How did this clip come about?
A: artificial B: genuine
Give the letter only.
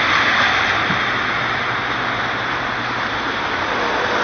B